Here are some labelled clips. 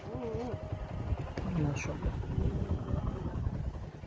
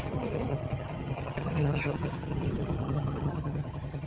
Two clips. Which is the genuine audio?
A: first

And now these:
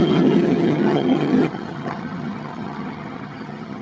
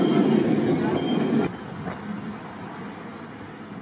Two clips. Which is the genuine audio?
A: second